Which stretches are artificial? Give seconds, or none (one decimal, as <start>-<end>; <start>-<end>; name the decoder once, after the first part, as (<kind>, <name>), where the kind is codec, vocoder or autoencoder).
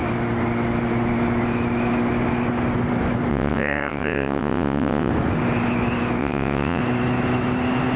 3.3-5.1 (vocoder, WaveNeXt); 6.2-6.8